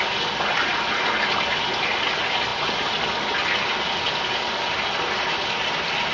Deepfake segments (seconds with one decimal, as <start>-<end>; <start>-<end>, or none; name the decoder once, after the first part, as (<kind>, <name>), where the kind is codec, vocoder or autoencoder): none